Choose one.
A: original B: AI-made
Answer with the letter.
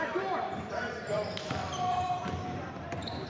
B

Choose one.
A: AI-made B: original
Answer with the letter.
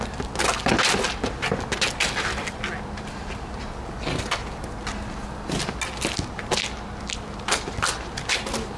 B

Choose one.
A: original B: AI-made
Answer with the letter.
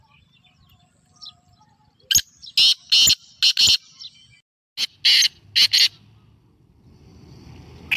A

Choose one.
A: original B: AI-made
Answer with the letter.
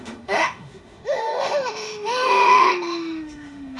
B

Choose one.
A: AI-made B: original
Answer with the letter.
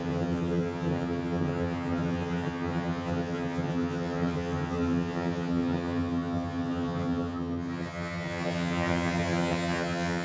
A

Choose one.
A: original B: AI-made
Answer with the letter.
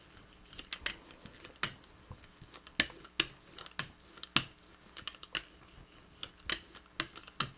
A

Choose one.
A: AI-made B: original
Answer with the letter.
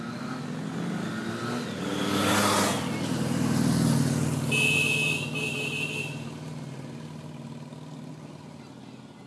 B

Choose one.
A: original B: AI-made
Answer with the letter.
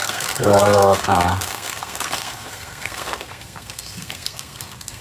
B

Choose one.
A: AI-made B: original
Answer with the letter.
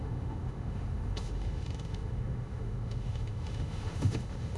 A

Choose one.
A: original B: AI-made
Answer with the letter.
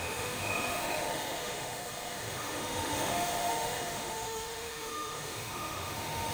B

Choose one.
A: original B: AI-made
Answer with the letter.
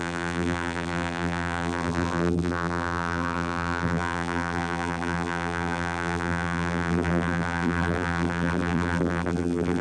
B